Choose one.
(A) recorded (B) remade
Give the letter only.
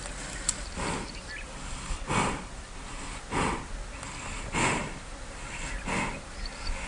A